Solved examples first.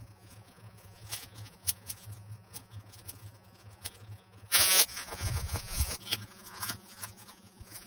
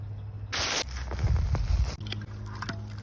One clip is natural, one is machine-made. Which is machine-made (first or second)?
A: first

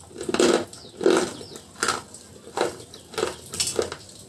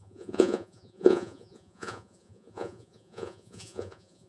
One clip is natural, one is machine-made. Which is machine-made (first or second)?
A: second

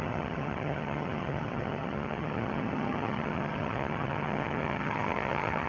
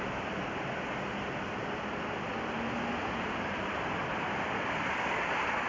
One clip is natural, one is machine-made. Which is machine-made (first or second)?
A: first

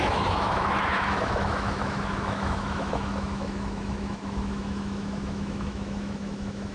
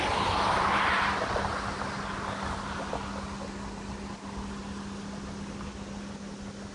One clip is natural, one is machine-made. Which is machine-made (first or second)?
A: first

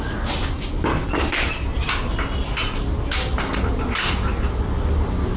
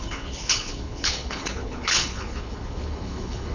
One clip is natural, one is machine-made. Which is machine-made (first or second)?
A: second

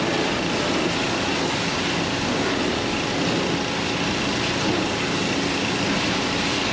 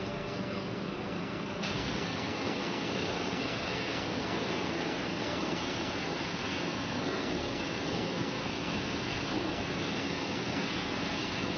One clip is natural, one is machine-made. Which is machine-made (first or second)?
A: second